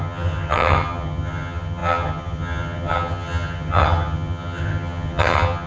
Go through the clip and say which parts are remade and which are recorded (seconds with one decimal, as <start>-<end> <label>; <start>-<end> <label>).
0.0-5.7 remade